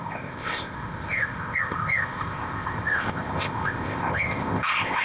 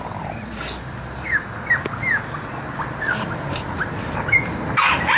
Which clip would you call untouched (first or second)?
second